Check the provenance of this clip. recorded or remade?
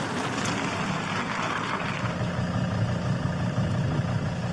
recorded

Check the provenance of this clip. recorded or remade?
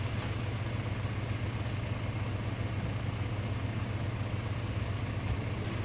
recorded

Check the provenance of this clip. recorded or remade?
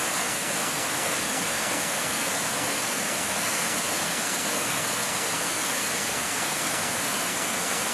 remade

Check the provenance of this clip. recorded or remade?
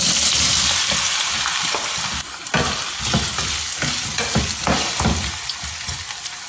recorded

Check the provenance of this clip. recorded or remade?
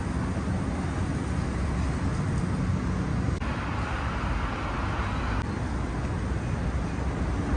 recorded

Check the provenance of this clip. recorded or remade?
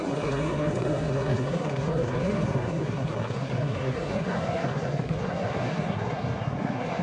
remade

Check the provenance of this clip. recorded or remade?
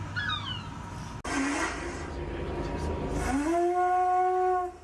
recorded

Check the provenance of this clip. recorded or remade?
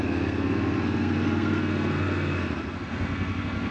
remade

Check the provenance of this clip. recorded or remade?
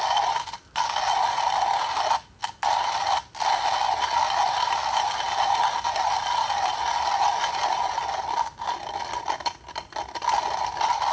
recorded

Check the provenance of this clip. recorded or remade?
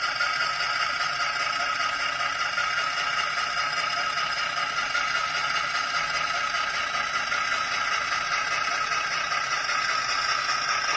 recorded